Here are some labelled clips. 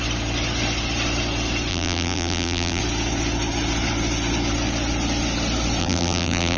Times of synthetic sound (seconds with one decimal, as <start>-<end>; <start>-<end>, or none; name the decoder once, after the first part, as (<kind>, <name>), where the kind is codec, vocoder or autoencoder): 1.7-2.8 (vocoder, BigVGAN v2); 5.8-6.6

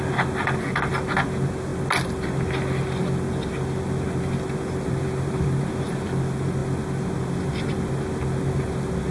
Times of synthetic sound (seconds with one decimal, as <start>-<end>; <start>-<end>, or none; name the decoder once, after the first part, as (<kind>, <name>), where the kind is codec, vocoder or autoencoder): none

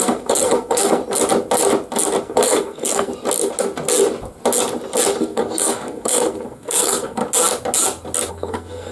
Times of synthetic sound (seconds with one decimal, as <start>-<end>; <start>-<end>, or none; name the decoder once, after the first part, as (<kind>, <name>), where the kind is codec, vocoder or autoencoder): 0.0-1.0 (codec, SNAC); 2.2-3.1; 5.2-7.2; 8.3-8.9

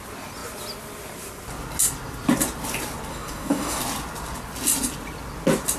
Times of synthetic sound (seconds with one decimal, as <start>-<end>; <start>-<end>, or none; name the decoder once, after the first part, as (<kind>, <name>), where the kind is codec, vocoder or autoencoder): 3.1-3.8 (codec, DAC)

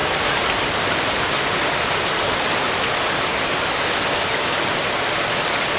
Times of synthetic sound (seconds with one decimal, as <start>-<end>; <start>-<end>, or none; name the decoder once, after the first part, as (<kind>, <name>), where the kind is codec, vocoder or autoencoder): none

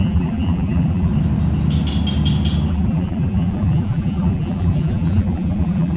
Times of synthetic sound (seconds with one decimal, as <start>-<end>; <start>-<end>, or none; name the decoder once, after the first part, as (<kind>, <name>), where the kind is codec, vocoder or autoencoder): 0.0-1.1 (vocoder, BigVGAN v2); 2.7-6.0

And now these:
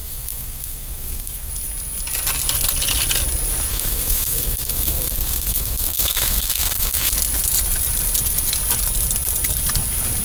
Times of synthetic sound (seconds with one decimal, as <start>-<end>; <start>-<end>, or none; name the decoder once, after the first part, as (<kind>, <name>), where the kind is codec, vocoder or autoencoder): 0.0-1.5 (codec, SNAC); 3.7-7.1

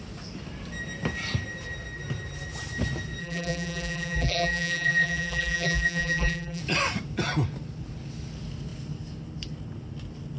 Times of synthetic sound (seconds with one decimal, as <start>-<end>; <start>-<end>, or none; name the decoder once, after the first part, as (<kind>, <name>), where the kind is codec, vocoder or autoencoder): 3.2-6.6 (vocoder, BigVGAN v2)